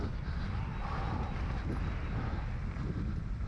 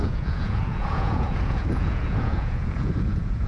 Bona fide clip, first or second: first